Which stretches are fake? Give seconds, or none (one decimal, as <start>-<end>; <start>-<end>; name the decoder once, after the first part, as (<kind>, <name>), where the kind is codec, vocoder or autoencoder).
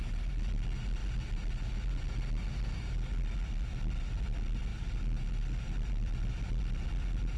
none